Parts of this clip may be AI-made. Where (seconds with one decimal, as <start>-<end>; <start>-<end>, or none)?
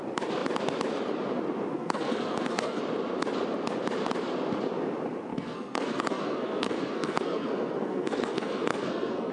1.7-2.8; 5.3-9.3